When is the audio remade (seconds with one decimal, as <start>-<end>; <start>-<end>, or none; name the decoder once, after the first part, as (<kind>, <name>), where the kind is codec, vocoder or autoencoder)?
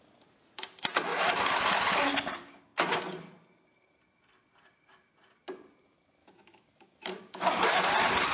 6.2-7.7 (autoencoder, DAC-VAE)